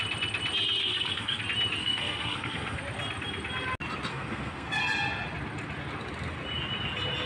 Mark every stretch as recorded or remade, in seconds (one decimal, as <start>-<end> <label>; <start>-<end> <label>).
0.0-0.8 recorded; 0.8-1.4 remade; 1.4-1.8 recorded; 1.8-2.8 remade; 2.8-4.1 recorded; 4.1-4.8 remade; 4.8-7.3 recorded